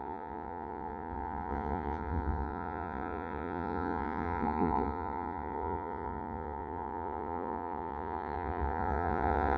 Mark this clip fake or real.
fake